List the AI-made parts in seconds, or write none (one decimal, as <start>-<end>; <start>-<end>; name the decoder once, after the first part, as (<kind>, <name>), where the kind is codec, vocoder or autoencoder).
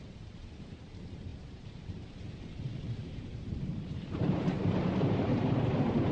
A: 0.0-6.1 (vocoder, BigVGAN v2)